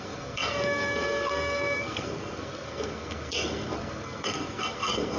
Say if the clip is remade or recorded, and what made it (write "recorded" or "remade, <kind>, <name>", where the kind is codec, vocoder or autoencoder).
remade, codec, SNAC